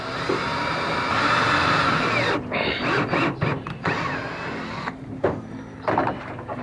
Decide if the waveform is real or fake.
real